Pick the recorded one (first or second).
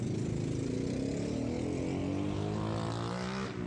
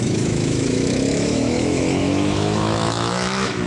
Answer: first